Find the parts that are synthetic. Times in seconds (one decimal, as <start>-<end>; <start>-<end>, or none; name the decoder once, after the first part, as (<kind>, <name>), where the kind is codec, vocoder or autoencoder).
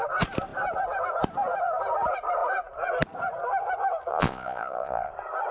4.1-5.1 (vocoder, Vocos)